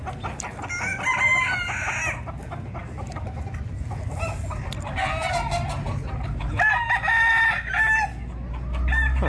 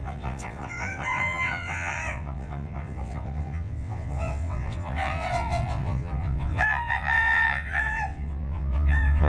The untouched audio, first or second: first